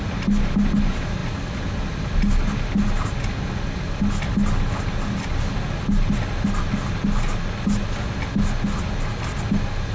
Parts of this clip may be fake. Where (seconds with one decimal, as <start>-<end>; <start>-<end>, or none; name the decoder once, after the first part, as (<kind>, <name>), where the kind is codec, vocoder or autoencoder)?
none